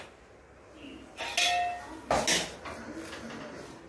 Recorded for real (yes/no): yes